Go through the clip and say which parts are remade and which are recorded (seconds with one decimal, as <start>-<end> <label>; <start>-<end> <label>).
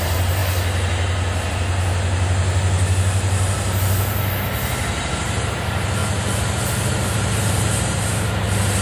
0.0-0.4 remade; 0.4-5.4 recorded; 5.4-6.0 remade; 6.0-6.9 recorded; 6.9-8.8 remade